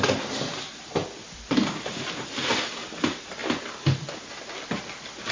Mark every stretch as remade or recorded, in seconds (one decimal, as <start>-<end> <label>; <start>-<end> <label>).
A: 0.0-5.3 recorded

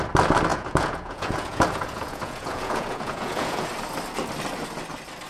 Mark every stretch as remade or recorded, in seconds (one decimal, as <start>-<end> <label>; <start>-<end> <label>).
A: 0.0-0.5 recorded; 0.5-3.7 remade; 3.7-5.3 recorded

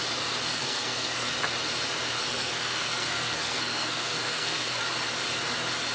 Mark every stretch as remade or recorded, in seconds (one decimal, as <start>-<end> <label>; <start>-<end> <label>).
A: 0.0-0.6 recorded; 0.6-1.3 remade; 1.3-2.3 recorded; 2.3-4.8 remade; 4.8-5.9 recorded